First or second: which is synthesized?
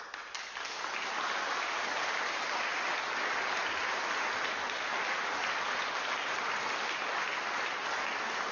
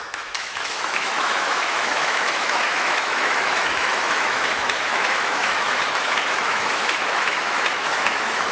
second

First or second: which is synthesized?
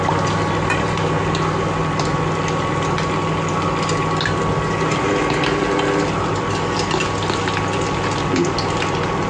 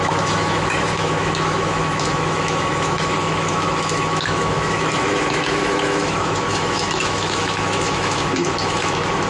second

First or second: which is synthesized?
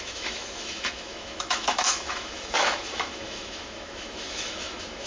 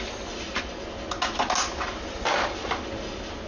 first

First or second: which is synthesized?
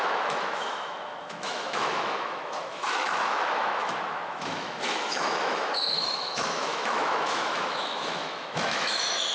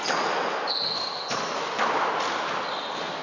first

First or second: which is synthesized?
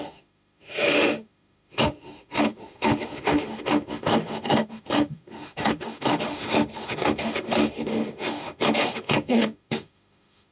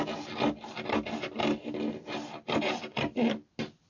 first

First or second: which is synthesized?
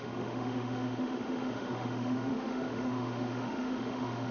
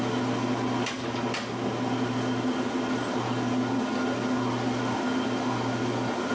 first